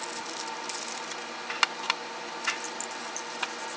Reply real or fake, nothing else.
real